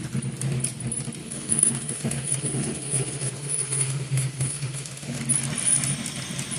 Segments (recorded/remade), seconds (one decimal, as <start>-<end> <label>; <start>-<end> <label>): 0.0-1.2 recorded; 1.2-5.2 remade; 5.2-6.6 recorded